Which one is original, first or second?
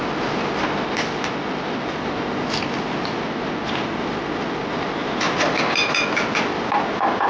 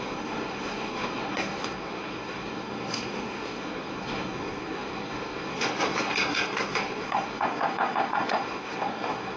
first